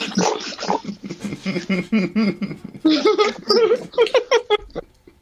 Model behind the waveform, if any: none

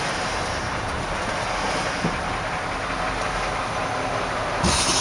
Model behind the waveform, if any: none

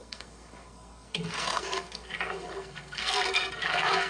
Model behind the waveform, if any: codec, SNAC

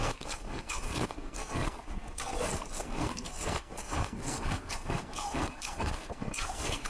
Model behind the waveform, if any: codec, SNAC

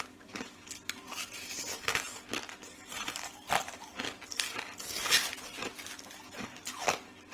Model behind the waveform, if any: none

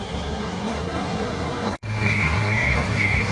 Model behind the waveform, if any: codec, SNAC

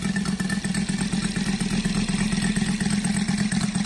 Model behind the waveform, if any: none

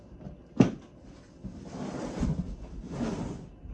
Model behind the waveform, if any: none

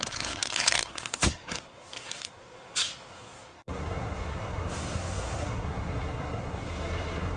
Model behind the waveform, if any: codec, SNAC